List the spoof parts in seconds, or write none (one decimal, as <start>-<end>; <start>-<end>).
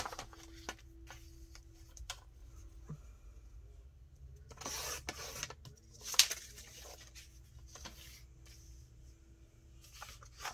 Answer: none